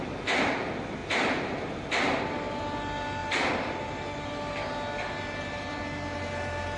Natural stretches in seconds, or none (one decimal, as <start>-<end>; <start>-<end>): 0.0-6.8

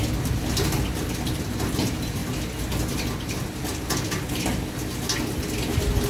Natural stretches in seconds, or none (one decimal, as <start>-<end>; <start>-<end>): 0.0-1.8; 2.2-6.1